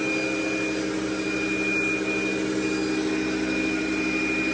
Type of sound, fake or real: real